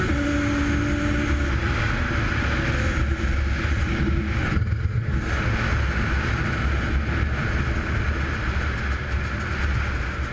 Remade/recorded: recorded